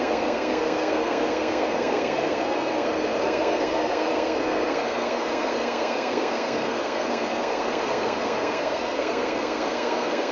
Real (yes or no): no